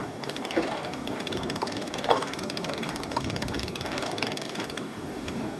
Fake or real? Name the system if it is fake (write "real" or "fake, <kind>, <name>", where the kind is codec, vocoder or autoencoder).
fake, codec, DAC